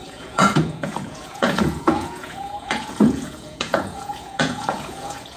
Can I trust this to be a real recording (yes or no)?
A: no